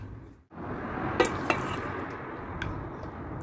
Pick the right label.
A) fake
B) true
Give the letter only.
B